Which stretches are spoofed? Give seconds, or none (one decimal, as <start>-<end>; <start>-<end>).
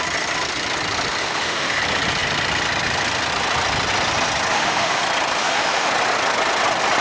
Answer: 1.2-1.8; 4.5-5.0; 5.4-5.9